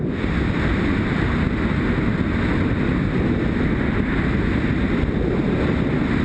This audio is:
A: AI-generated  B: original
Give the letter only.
B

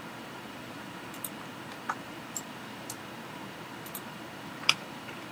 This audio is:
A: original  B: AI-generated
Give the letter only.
B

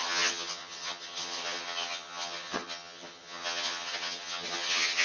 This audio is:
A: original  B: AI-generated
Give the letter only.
B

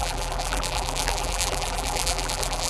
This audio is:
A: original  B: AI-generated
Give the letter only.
B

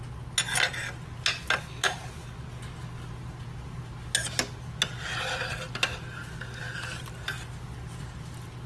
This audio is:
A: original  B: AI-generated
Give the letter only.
A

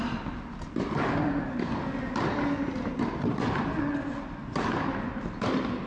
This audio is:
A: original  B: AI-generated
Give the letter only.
A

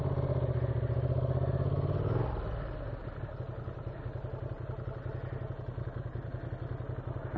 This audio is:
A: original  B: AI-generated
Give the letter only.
A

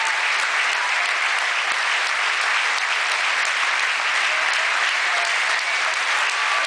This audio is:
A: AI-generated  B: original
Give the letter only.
B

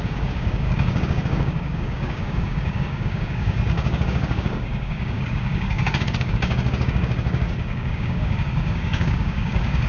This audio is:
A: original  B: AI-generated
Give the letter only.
B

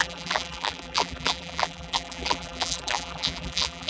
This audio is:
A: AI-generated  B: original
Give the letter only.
A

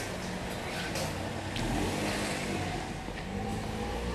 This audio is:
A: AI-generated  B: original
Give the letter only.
B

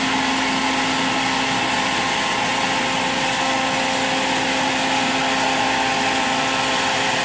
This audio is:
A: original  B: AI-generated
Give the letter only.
A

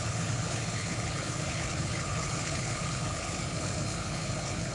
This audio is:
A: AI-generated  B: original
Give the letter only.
A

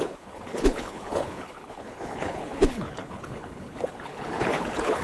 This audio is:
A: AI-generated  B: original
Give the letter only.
A